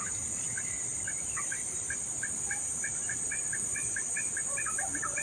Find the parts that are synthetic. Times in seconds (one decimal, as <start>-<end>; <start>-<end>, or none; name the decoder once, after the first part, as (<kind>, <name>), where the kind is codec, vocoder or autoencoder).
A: 0.9-4.0 (vocoder, BigVGAN v2)